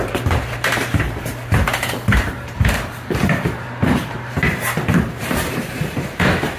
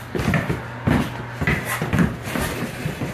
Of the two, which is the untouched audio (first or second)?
second